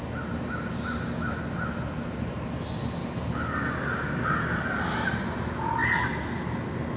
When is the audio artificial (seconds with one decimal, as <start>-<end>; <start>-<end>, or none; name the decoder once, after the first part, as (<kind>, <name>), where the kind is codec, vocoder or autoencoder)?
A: none